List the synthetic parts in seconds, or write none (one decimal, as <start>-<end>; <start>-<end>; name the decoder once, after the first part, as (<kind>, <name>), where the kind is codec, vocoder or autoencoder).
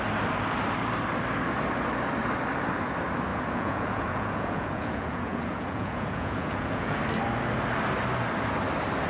3.3-7.0 (vocoder, Vocos)